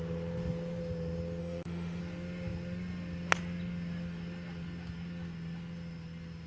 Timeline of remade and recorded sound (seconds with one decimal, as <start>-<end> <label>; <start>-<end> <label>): 0.0-1.4 recorded; 1.4-2.0 remade; 2.0-6.5 recorded